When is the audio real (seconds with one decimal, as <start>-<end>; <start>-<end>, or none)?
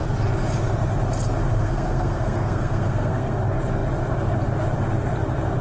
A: 0.0-1.5; 3.4-5.6